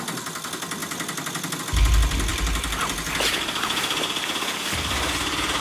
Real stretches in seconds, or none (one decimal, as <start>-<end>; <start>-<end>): 0.0-0.8; 1.6-2.3; 4.6-5.6